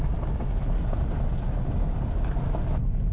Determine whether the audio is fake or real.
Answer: real